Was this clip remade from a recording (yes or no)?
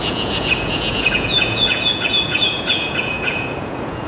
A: yes